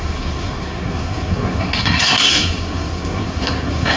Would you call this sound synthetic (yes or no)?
yes